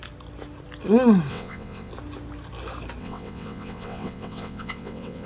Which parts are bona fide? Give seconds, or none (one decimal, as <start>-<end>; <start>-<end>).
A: 0.0-1.3; 1.9-3.0